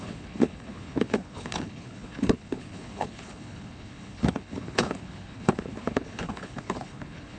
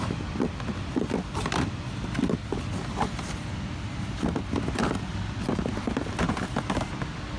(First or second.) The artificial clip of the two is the first